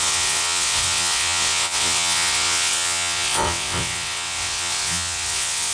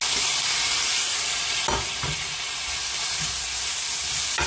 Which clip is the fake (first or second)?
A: first